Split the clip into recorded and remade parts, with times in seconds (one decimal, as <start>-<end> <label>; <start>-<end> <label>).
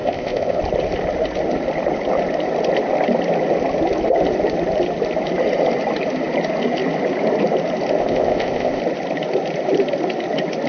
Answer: 0.0-0.6 remade; 0.6-8.0 recorded; 8.0-8.8 remade; 8.8-10.7 recorded